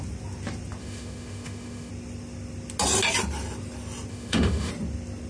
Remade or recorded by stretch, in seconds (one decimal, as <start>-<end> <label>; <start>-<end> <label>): 0.0-0.8 recorded; 0.8-1.9 remade; 1.9-4.1 recorded; 4.1-4.7 remade; 4.7-5.3 recorded